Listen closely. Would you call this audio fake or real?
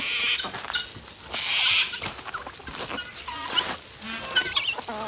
real